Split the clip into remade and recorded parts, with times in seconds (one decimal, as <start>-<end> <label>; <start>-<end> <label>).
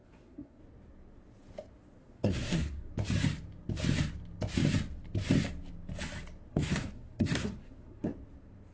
0.0-0.6 remade; 0.6-2.0 recorded; 2.0-2.9 remade; 2.9-6.5 recorded; 6.5-8.1 remade; 8.1-8.7 recorded